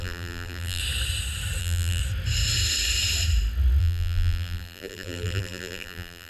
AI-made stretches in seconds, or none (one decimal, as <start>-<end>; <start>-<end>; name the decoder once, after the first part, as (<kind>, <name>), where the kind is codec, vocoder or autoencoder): 0.0-0.8 (vocoder, BigVGAN v2); 1.6-2.0; 3.8-6.3